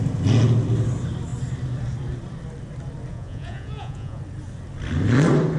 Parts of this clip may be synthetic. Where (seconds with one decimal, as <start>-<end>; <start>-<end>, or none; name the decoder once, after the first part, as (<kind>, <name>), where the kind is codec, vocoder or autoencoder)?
3.1-4.2 (vocoder, Vocos)

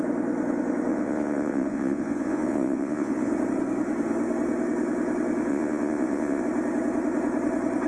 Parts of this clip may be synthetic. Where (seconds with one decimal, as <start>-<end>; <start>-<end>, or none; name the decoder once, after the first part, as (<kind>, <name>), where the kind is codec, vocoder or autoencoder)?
0.9-3.3 (vocoder, Vocos); 5.5-6.4

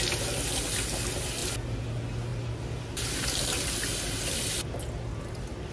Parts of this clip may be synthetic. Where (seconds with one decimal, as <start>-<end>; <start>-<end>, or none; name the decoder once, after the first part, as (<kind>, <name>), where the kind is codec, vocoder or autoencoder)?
none